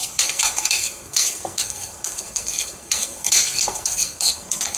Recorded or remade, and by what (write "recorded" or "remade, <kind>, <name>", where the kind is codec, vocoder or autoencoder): remade, codec, SNAC